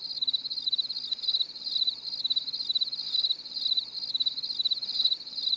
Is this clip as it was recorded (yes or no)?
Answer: yes